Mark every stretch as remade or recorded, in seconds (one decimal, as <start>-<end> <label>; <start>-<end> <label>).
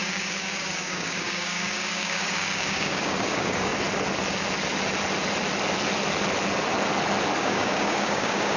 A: 0.0-3.7 remade; 3.7-7.4 recorded; 7.4-8.6 remade